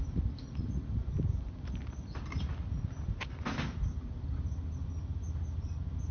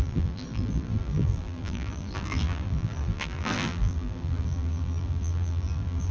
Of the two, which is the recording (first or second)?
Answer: first